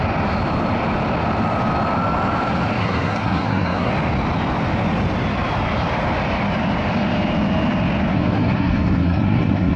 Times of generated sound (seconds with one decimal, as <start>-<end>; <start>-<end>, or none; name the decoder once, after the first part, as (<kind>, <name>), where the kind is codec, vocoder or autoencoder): 2.8-3.9 (codec, SNAC); 8.1-9.8